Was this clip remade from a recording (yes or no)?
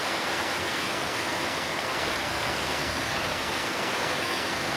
yes